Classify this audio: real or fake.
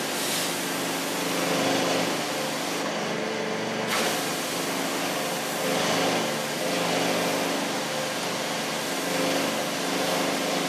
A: real